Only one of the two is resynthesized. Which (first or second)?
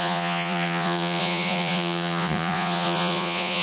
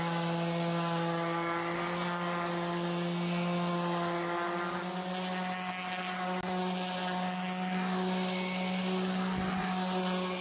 first